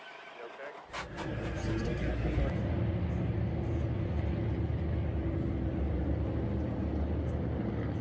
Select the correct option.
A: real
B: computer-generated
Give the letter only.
A